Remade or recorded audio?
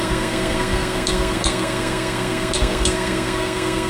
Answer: remade